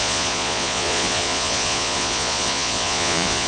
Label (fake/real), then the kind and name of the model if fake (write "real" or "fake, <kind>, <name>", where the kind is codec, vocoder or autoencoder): fake, vocoder, Vocos